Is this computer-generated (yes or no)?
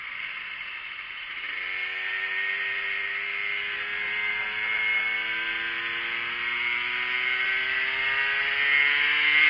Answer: no